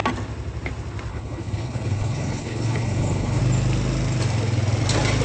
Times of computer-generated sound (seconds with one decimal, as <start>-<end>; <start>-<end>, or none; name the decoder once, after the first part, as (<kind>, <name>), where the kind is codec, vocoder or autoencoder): 1.1-3.4 (codec, HILCodec)